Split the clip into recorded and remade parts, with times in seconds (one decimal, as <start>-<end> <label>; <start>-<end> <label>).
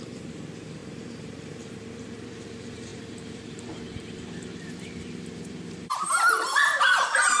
0.0-7.4 remade